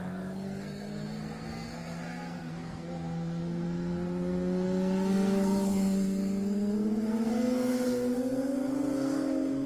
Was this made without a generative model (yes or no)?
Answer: no